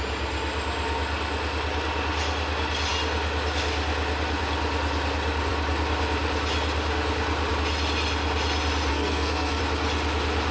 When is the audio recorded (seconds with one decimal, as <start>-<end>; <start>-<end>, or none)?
0.0-8.9; 9.6-10.5